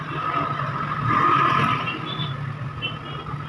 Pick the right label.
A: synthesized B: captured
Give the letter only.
B